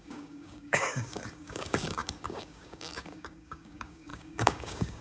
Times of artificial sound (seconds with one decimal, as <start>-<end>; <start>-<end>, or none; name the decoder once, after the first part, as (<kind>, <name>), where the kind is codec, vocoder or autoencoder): 0.0-5.0 (codec, DAC)